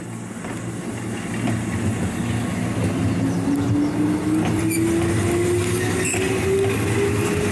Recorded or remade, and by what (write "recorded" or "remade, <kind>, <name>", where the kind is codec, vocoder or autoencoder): recorded